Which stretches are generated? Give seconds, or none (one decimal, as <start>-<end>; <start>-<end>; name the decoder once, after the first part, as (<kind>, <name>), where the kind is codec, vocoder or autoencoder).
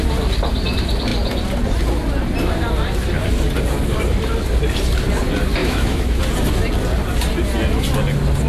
5.6-6.2 (autoencoder, DAC-VAE)